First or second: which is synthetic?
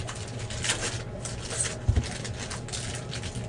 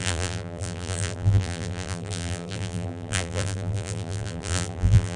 second